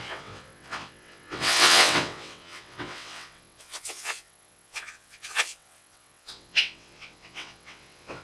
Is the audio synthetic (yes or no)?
yes